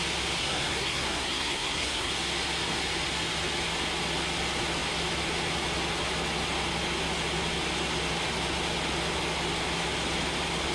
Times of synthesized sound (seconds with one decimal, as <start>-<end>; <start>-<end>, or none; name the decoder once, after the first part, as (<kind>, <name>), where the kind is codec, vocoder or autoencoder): 0.4-2.1 (codec, SNAC)